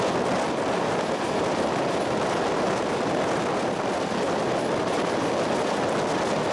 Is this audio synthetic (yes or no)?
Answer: no